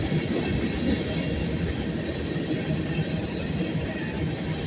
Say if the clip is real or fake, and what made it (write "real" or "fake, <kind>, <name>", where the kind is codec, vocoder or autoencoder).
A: real